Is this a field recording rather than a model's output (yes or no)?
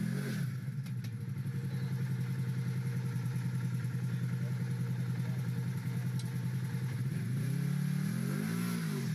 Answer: yes